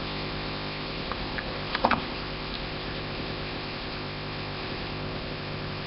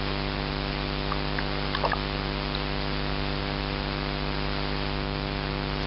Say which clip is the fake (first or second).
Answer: first